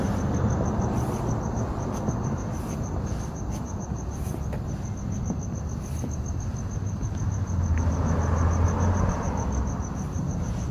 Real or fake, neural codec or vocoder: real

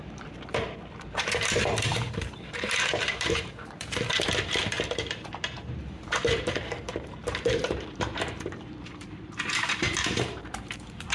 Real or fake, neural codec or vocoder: fake, vocoder, BigVGAN v2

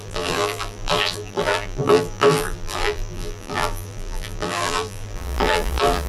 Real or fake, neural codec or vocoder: fake, vocoder, BigVGAN v2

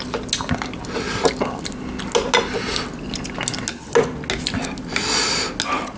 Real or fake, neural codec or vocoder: real